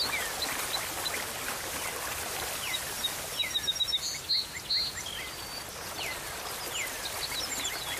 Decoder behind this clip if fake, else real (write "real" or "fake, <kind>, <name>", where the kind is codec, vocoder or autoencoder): real